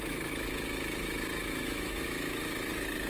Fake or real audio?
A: fake